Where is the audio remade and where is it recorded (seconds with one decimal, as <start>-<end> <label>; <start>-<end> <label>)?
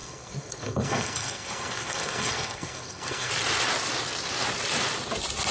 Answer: 0.0-3.3 remade; 3.3-5.5 recorded